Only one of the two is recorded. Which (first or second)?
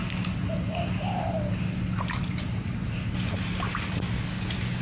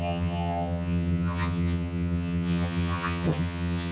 first